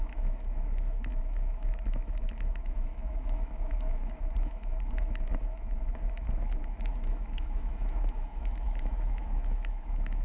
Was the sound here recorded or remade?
remade